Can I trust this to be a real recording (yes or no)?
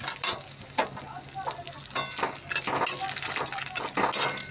yes